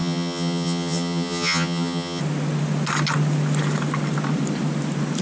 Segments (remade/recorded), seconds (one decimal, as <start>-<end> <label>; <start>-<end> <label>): 0.0-2.2 remade; 2.2-5.2 recorded